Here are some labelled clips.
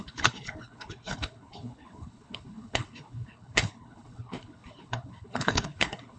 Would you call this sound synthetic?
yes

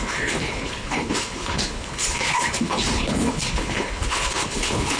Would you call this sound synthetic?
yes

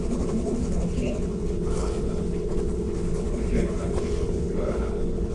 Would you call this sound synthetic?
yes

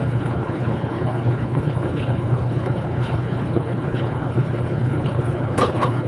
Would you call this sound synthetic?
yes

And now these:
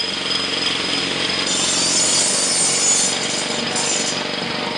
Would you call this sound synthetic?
no